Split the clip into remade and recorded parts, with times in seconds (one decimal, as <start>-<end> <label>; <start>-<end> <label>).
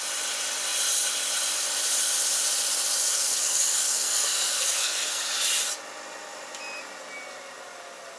0.0-3.1 recorded; 3.1-5.3 remade; 5.3-8.2 recorded